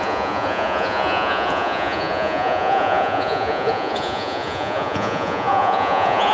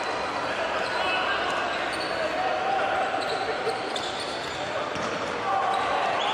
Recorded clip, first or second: second